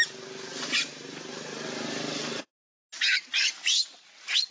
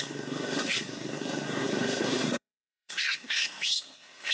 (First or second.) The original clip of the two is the first